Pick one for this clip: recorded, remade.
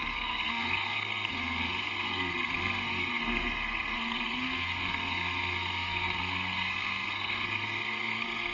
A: remade